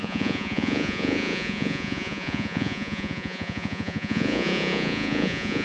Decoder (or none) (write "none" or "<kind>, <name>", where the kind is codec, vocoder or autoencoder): vocoder, Vocos